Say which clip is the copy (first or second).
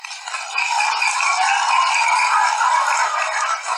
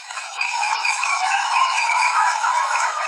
second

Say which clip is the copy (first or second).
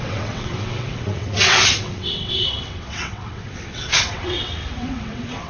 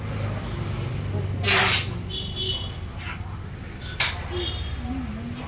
first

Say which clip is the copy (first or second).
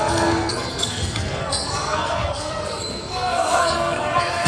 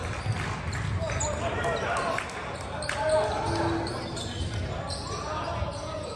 first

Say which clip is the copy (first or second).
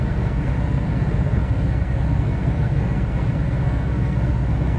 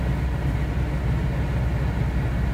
first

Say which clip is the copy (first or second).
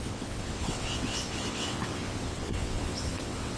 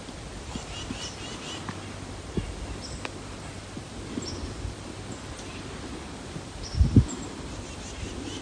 first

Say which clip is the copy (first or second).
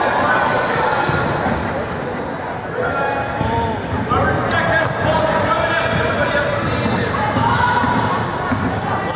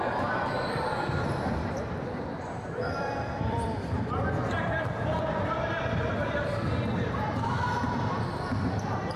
second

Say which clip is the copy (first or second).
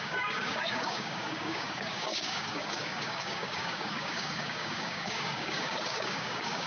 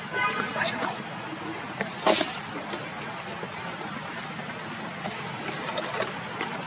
first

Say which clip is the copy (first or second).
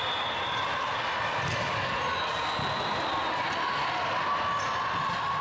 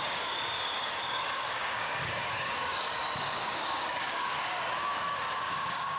second